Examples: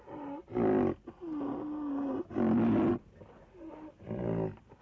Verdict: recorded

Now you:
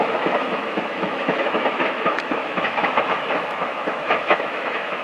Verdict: remade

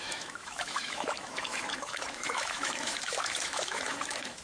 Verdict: remade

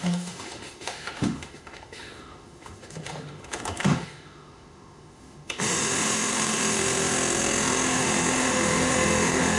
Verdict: remade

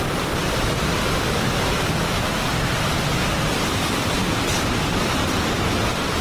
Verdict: recorded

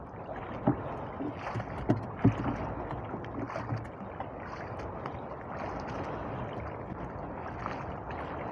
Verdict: recorded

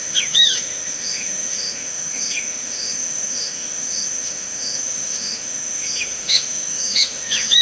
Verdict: remade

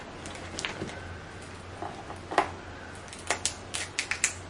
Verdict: recorded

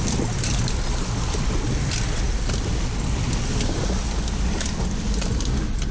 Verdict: recorded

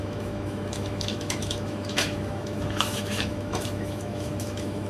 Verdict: remade